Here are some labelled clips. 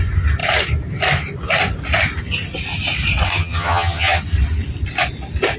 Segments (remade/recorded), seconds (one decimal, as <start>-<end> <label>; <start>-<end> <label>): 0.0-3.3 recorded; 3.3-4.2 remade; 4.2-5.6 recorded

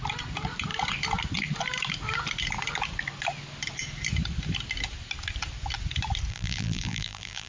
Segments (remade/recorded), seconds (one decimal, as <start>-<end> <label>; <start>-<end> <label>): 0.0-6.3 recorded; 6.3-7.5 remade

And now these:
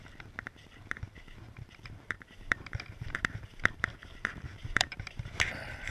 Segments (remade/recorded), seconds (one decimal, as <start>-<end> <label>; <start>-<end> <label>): 0.0-1.8 recorded; 1.8-5.3 remade; 5.3-5.9 recorded

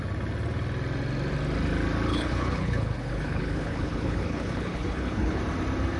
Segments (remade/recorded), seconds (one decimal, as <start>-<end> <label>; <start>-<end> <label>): 0.0-2.1 recorded; 2.1-5.4 remade; 5.4-6.0 recorded

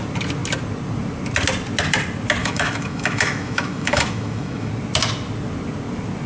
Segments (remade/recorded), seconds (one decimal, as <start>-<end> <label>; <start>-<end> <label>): 0.0-2.4 recorded; 2.4-4.7 remade; 4.7-6.3 recorded

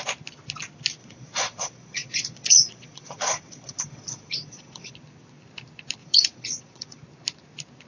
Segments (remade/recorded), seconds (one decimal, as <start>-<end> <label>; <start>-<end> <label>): 0.0-1.0 recorded; 1.0-4.9 remade; 4.9-6.0 recorded; 6.0-7.0 remade; 7.0-7.9 recorded

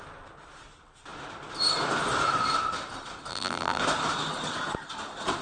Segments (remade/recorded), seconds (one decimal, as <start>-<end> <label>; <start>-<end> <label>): 0.0-3.3 recorded; 3.3-3.8 remade; 3.8-5.4 recorded